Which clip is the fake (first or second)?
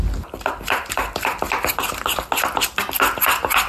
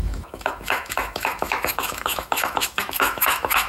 second